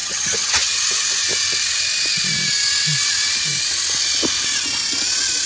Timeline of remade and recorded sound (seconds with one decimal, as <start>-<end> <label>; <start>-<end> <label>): 0.0-0.8 remade; 0.8-5.5 recorded